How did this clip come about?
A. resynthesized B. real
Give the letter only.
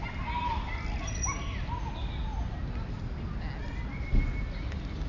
B